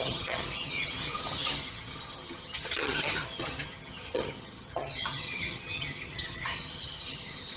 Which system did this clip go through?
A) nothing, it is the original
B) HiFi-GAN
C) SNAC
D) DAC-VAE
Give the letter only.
B